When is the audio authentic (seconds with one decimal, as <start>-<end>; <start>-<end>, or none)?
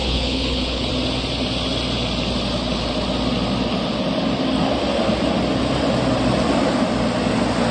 0.9-7.7